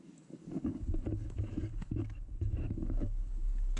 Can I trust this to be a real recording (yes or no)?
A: no